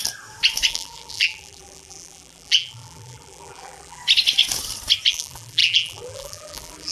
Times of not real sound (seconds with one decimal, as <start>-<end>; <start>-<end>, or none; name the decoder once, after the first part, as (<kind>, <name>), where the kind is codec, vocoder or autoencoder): 0.7-4.0 (vocoder, BigVGAN v2); 5.1-6.9